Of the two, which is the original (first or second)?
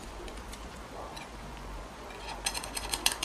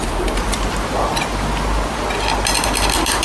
second